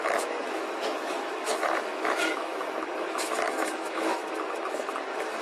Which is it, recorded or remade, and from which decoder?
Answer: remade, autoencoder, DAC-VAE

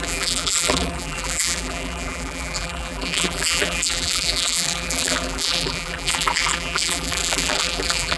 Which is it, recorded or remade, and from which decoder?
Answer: remade, vocoder, BigVGAN v2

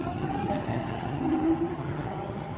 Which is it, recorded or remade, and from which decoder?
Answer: remade, vocoder, HiFi-GAN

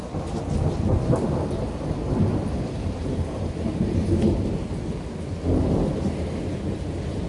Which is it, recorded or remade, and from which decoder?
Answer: recorded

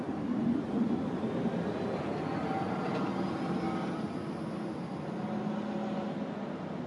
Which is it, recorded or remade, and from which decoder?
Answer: recorded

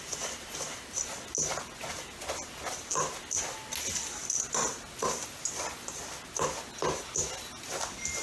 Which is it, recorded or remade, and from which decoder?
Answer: recorded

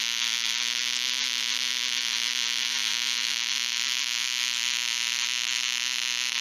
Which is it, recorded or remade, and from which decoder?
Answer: remade, vocoder, BigVGAN v2